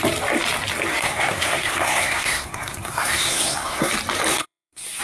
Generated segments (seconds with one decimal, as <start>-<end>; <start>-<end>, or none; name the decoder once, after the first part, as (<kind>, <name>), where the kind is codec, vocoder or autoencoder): 0.9-3.9 (codec, SNAC); 4.3-5.0